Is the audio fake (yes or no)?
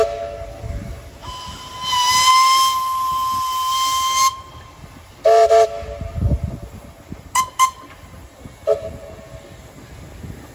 no